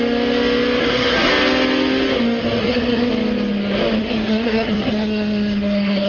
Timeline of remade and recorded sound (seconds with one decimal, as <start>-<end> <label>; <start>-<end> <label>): 0.0-0.8 recorded; 0.8-1.3 remade; 1.3-2.6 recorded; 2.6-3.1 remade; 3.1-4.0 recorded; 4.0-6.1 remade